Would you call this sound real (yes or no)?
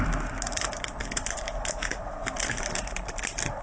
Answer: yes